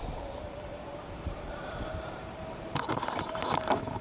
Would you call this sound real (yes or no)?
no